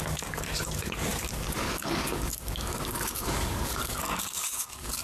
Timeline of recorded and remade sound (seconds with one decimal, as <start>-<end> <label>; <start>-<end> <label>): 0.0-5.0 remade